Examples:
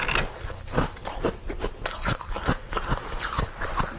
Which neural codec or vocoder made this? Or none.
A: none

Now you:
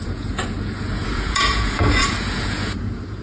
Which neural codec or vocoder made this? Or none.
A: vocoder, Vocos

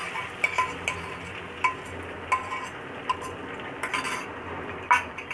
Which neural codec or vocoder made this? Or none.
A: none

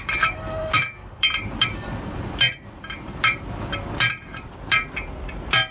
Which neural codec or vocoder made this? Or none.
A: vocoder, BigVGAN v2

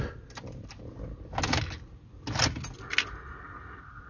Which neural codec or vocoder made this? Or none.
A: none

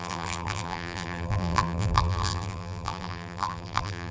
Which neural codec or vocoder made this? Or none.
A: vocoder, BigVGAN v2